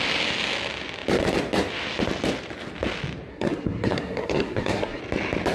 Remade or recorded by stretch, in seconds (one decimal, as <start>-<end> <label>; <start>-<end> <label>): 0.0-3.3 recorded; 3.3-5.0 remade; 5.0-5.5 recorded